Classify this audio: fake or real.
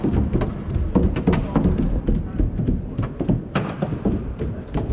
real